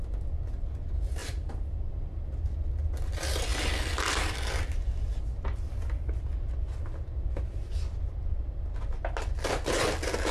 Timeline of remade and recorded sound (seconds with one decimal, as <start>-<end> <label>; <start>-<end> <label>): 0.0-1.2 recorded; 1.2-2.2 remade; 2.2-3.5 recorded; 3.5-8.4 remade; 8.4-10.3 recorded